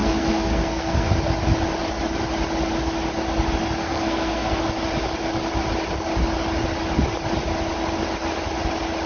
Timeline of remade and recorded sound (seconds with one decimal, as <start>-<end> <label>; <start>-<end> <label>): 0.0-1.1 remade; 1.1-3.8 recorded; 3.8-4.6 remade; 4.6-9.1 recorded